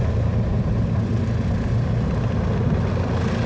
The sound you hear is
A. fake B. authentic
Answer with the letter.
B